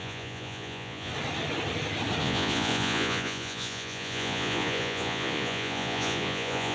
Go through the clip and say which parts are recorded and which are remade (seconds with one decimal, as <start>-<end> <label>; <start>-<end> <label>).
0.0-1.1 remade; 1.1-2.2 recorded; 2.2-6.7 remade